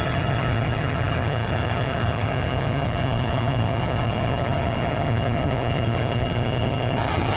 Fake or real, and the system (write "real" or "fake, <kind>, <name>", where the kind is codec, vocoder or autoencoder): fake, vocoder, HiFi-GAN